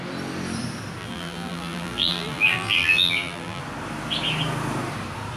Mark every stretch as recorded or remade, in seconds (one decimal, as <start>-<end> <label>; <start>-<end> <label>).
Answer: 0.0-1.0 recorded; 1.0-3.6 remade; 3.6-5.4 recorded